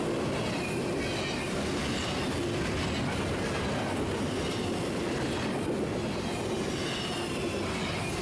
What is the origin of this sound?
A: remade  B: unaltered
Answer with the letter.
B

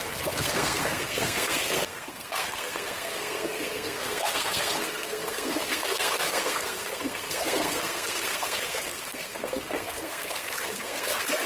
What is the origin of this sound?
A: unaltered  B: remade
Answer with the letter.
B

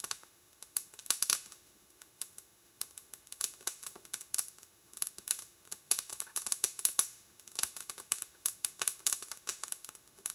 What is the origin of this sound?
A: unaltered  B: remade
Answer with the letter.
B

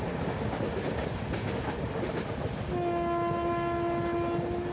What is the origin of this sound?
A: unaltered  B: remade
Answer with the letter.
A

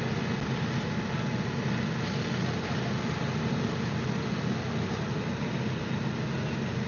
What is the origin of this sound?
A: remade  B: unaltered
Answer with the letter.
B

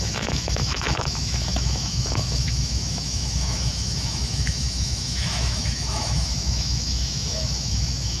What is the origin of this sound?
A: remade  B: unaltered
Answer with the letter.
A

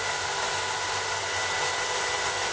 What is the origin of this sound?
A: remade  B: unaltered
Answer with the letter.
B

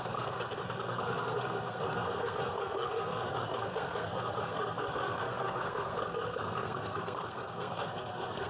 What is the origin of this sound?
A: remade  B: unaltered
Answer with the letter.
A